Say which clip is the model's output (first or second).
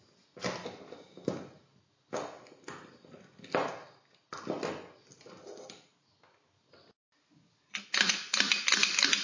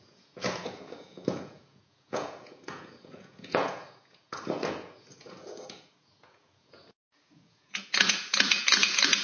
second